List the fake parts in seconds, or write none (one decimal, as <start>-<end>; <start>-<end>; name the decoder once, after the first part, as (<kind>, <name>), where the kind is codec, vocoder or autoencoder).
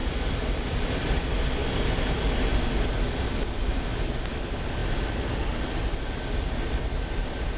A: 0.0-1.2 (vocoder, BigVGAN v2)